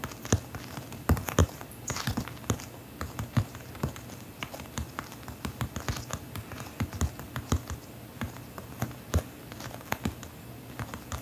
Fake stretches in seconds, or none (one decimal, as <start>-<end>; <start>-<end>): 1.4-2.2